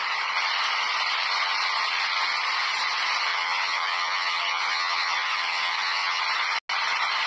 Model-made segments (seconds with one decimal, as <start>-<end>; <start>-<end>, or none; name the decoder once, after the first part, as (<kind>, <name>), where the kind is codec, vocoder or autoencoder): 3.3-6.2 (vocoder, HiFi-GAN)